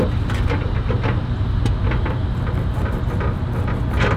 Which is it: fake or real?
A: real